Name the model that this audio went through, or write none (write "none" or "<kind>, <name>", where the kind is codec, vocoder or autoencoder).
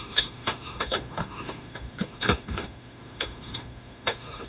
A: autoencoder, DAC-VAE